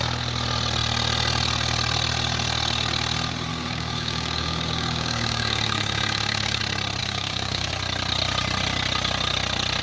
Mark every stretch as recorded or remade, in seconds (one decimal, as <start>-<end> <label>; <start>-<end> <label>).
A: 0.0-3.5 recorded; 3.5-6.6 remade; 6.6-7.0 recorded; 7.0-7.7 remade; 7.7-9.8 recorded